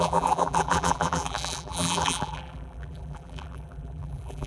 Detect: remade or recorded remade